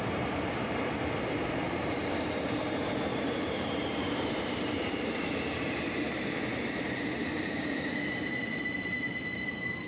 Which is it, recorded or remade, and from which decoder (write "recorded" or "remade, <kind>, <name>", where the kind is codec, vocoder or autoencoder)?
remade, vocoder, BigVGAN v2